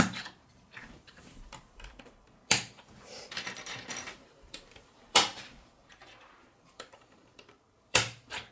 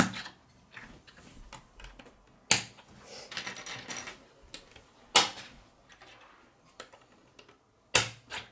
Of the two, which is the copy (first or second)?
first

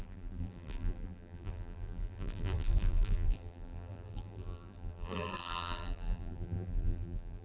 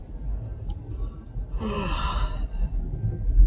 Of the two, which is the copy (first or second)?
first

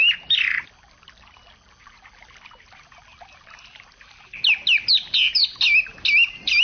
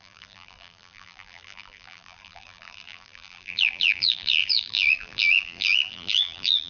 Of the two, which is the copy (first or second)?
second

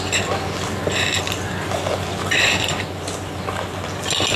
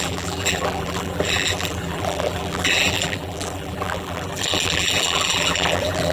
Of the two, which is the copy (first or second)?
second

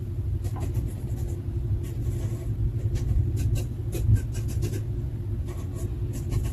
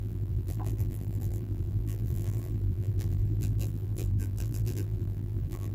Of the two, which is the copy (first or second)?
second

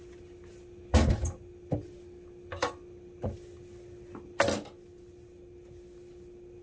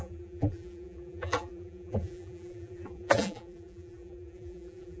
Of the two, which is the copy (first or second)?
second